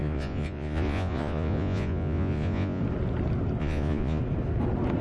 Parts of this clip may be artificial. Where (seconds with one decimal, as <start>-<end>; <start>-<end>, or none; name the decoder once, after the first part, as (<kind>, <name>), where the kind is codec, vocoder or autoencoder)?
0.0-2.8 (vocoder, Vocos); 3.6-4.2